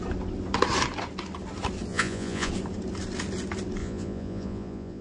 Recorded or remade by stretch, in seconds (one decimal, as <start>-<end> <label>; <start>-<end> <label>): 0.0-1.9 recorded; 1.9-2.5 remade; 2.5-3.8 recorded; 3.8-5.0 remade